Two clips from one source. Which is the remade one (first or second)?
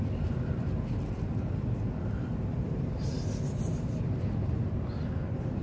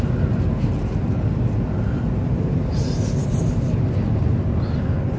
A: first